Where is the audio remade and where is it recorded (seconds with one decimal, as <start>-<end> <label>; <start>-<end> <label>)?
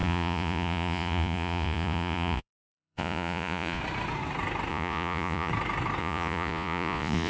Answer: 0.0-3.8 remade; 3.8-4.7 recorded; 4.7-5.5 remade; 5.5-6.0 recorded; 6.0-7.3 remade